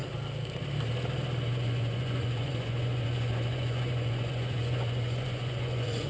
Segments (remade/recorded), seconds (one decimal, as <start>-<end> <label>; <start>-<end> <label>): 0.0-1.5 recorded; 1.5-6.1 remade